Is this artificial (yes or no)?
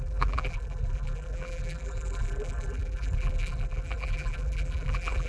yes